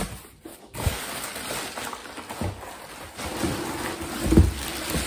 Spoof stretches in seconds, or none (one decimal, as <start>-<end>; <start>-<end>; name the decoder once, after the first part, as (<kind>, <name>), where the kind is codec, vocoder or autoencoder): 0.5-1.3 (codec, DAC)